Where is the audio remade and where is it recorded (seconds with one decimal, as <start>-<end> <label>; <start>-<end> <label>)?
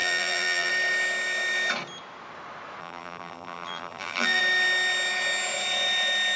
0.0-0.7 remade; 0.7-2.8 recorded; 2.8-4.4 remade; 4.4-6.4 recorded